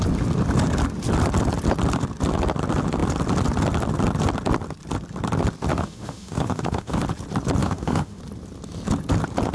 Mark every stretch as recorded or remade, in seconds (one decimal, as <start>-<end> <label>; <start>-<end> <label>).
0.0-5.7 recorded; 5.7-7.0 remade; 7.0-7.6 recorded; 7.6-8.2 remade; 8.2-9.5 recorded